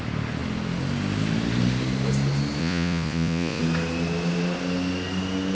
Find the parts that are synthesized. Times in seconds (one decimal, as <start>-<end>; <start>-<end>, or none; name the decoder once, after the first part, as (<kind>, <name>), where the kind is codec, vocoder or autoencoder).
2.6-3.6 (vocoder, Vocos)